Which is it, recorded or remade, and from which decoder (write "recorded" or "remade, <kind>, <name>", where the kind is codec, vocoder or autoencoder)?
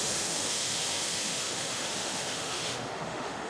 remade, autoencoder, DAC-VAE